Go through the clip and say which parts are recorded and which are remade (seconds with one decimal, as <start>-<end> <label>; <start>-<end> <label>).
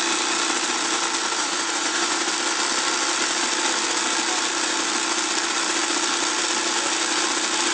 0.0-1.4 recorded; 1.4-2.3 remade; 2.3-7.7 recorded